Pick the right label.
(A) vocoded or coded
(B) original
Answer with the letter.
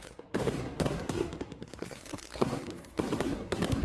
A